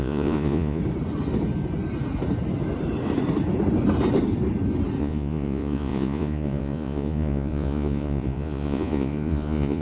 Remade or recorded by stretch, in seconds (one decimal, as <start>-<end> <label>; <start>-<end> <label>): 0.0-0.8 remade; 0.8-5.0 recorded; 5.0-9.8 remade